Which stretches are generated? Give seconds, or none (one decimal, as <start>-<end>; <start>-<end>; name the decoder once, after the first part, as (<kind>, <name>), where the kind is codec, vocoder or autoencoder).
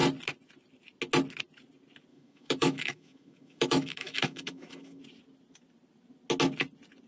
2.1-5.0 (autoencoder, DAC-VAE)